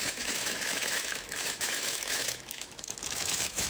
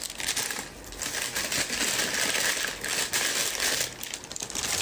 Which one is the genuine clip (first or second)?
second